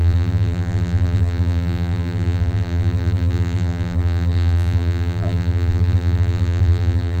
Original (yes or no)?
no